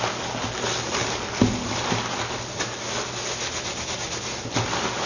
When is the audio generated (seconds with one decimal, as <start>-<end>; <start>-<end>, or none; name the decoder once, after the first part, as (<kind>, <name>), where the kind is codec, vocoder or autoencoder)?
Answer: none